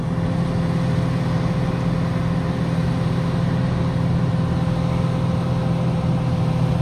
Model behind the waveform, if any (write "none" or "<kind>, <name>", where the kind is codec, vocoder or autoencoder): none